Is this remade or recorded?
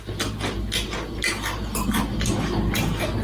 recorded